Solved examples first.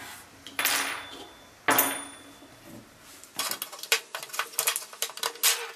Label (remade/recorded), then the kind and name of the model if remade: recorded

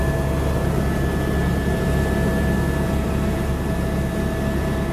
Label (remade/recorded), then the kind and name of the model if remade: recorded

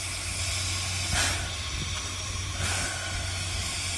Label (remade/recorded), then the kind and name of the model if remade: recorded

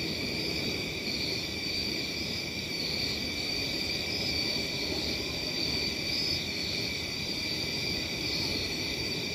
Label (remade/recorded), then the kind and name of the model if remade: remade, vocoder, BigVGAN v2